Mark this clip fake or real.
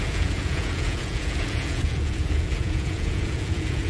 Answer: fake